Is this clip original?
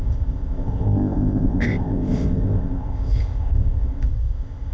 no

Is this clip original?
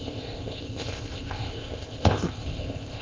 no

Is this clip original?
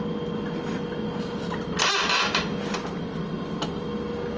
yes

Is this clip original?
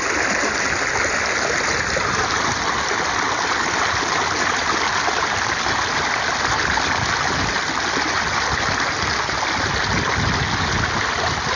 yes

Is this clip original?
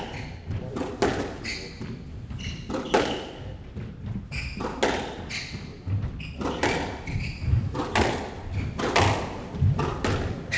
yes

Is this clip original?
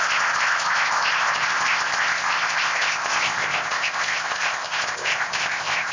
no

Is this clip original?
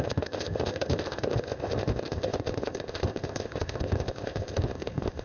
no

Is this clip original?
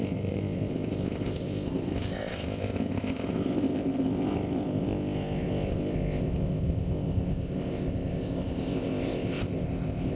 no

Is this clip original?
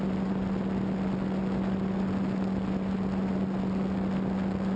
yes